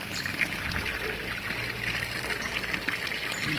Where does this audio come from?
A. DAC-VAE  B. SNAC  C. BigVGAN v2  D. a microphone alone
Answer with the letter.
D